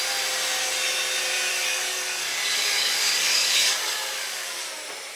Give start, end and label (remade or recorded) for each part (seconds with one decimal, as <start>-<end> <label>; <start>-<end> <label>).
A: 0.0-1.5 recorded; 1.5-4.6 remade; 4.6-5.2 recorded